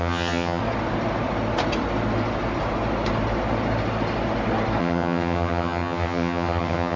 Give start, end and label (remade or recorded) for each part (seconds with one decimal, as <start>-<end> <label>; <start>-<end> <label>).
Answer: 0.0-0.6 remade; 0.6-4.8 recorded; 4.8-7.0 remade